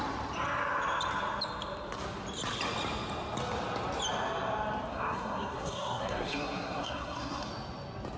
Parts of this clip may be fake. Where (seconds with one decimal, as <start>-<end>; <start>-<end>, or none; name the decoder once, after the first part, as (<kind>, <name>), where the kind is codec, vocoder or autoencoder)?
4.9-7.5 (codec, SNAC)